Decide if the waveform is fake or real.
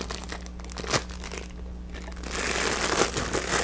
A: real